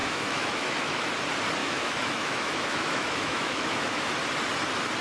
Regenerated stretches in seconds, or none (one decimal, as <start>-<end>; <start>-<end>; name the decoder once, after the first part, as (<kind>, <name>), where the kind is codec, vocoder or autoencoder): 0.0-1.1 (autoencoder, DAC-VAE); 1.6-4.1